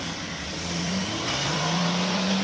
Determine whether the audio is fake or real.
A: fake